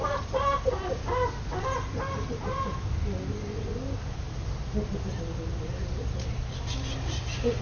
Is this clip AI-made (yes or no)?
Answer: no